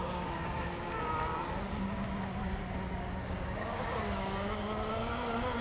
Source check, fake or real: fake